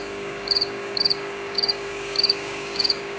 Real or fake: fake